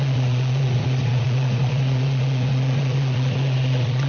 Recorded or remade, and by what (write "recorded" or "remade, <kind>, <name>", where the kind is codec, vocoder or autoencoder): remade, vocoder, Vocos